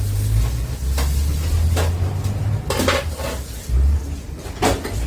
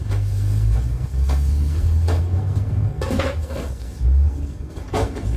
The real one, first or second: first